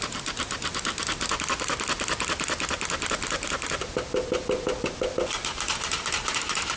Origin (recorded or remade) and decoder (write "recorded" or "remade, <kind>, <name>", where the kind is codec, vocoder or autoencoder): recorded